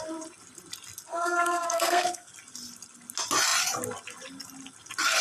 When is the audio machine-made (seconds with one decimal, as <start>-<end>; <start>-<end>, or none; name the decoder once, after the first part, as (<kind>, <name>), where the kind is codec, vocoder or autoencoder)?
1.1-2.3 (codec, SNAC)